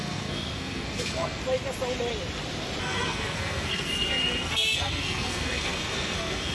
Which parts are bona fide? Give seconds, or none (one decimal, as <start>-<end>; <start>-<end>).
1.4-2.8